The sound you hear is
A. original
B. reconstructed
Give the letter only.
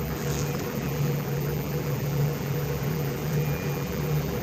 B